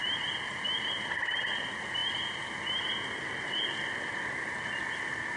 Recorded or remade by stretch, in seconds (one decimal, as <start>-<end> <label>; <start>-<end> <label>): 0.0-5.4 recorded